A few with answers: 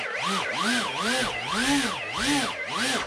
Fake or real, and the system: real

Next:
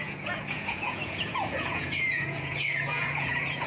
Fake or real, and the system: fake, vocoder, Vocos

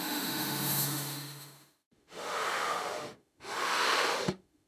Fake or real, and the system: fake, autoencoder, DAC-VAE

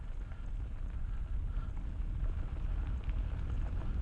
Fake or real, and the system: real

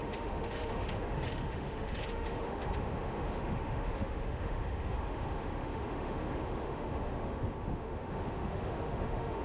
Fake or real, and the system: fake, autoencoder, DAC-VAE